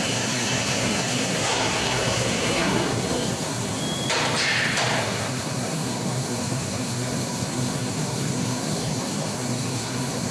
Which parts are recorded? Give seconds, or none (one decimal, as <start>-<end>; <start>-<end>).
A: 3.8-5.0

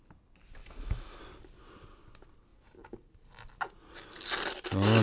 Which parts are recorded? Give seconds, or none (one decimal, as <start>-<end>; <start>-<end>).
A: 0.0-0.6; 1.2-5.0

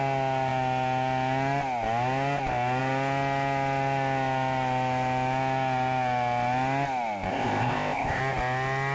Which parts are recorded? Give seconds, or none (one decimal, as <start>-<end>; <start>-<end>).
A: 0.0-7.3; 8.2-8.9

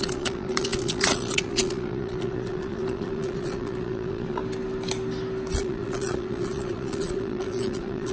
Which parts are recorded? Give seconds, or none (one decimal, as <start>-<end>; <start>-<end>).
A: 4.4-5.5

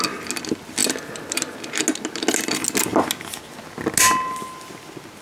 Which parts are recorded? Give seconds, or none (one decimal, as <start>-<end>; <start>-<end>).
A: 0.0-5.2

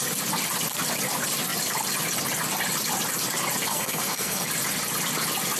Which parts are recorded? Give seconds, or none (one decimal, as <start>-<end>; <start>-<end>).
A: 0.0-3.7; 4.5-5.6

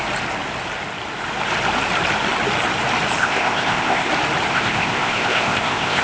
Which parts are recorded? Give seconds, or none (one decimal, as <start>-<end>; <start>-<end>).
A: 0.0-3.2; 4.1-4.5

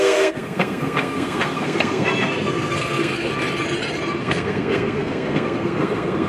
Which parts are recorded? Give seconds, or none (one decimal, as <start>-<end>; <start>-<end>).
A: 3.3-4.2